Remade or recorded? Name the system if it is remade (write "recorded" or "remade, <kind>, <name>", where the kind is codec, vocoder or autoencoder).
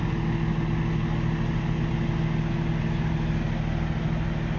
recorded